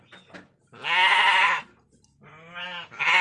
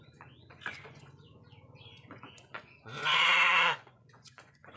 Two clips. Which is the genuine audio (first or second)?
first